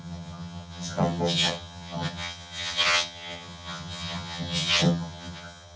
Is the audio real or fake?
fake